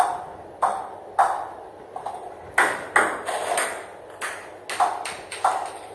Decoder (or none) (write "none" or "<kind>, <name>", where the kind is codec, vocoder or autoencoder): none